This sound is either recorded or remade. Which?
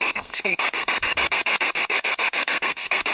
remade